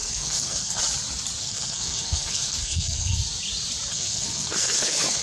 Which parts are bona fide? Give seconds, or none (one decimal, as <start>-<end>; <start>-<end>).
0.8-1.4; 3.2-3.9